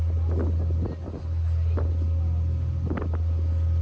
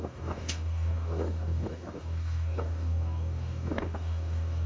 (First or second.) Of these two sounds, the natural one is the first